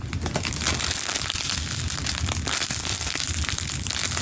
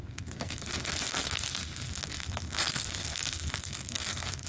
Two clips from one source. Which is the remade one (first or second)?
second